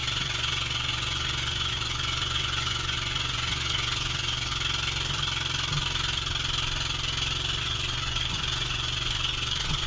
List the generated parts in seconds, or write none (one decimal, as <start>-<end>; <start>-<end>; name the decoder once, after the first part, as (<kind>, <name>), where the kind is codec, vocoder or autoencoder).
0.0-4.5 (vocoder, Vocos); 7.6-9.9